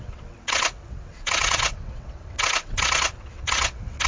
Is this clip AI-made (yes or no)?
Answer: yes